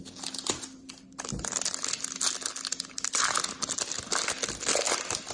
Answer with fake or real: real